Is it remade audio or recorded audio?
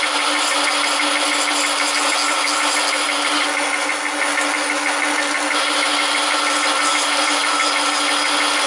recorded